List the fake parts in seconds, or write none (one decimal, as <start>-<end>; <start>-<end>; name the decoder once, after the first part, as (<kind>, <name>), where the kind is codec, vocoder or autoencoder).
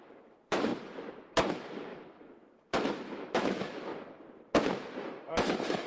0.0-0.7 (autoencoder, DAC-VAE); 1.5-3.9; 5.3-5.9